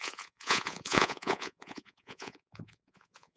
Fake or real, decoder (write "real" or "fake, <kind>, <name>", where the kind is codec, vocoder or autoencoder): fake, vocoder, Vocos